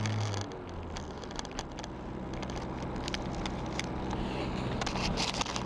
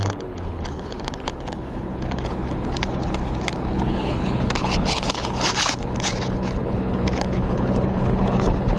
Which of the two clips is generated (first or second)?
second